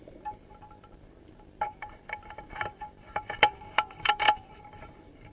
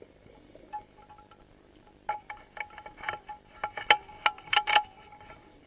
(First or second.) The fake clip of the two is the first